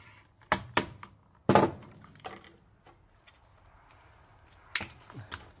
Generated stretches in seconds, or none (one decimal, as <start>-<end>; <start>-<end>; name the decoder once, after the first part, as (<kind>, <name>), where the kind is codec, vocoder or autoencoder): none